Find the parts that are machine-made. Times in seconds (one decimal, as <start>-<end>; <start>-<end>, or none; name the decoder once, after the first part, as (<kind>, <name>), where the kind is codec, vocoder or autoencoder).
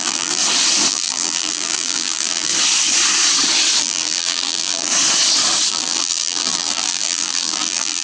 0.0-0.4 (vocoder, BigVGAN v2); 0.9-2.5; 3.8-4.9; 5.7-8.0